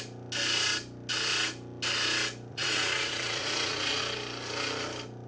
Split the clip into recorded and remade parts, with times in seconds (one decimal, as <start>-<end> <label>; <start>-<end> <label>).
0.0-2.5 recorded; 2.5-4.0 remade; 4.0-5.3 recorded